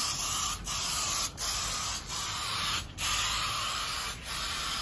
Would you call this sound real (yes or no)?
no